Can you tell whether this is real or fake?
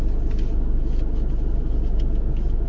real